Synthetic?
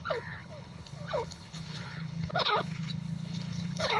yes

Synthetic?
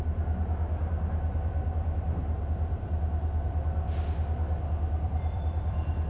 yes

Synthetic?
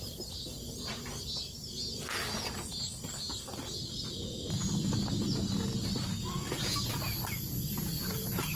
no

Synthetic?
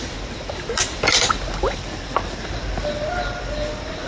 yes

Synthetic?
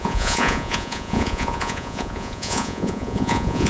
yes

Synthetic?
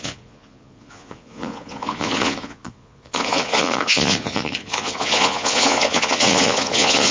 yes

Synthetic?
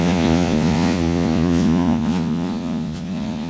yes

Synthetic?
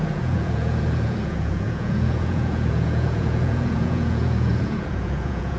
yes